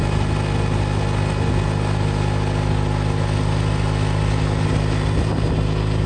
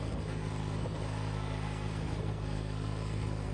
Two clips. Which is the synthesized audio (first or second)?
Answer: second